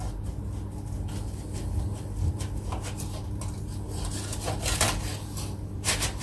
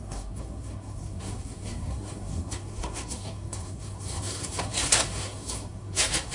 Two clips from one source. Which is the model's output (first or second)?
second